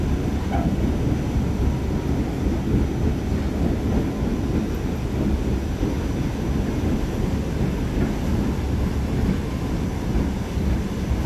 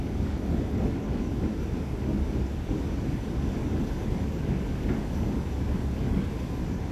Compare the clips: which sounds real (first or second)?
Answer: first